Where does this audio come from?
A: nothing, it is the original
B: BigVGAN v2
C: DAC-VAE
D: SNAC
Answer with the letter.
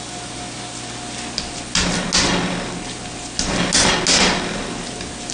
A